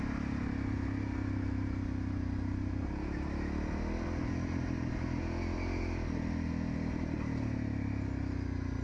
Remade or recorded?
recorded